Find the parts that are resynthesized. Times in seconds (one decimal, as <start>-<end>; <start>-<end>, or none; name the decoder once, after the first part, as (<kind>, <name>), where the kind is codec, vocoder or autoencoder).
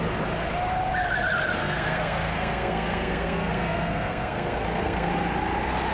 1.6-5.1 (codec, SNAC)